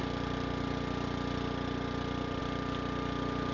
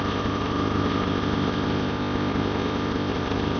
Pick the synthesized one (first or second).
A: second